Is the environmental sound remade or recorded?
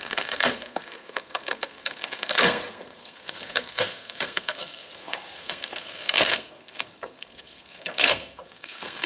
remade